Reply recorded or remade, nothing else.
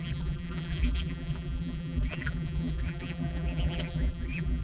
remade